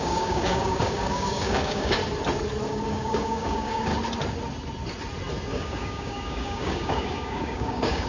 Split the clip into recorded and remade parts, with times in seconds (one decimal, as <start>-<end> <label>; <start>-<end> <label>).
0.0-2.0 remade; 2.0-2.7 recorded; 2.7-3.9 remade; 3.9-5.5 recorded; 5.5-8.1 remade